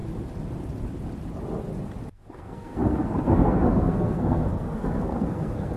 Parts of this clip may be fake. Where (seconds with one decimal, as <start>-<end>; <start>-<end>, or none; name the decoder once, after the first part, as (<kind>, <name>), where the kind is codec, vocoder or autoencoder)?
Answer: 2.1-5.8 (codec, SNAC)